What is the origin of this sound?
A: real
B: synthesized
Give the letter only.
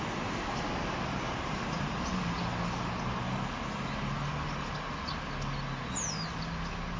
A